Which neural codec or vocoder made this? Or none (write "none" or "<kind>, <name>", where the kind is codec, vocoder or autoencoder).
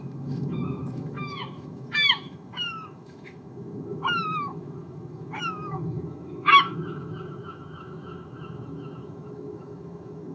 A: autoencoder, DAC-VAE